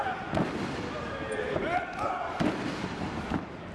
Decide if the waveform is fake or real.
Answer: real